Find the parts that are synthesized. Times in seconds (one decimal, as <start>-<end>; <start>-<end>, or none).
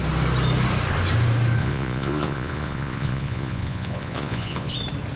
1.6-4.7